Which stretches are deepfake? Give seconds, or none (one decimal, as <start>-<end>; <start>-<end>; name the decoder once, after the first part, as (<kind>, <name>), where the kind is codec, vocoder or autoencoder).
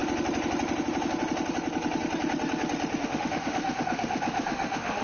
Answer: 3.0-5.0 (autoencoder, DAC-VAE)